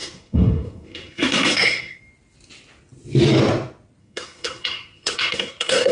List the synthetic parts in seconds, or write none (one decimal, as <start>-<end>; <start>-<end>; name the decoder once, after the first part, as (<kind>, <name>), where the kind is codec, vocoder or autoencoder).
0.0-2.0 (codec, SNAC); 4.0-5.9